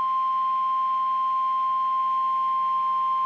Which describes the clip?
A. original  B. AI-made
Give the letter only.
A